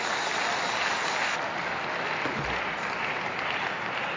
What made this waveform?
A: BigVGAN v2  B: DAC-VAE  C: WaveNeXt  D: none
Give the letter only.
D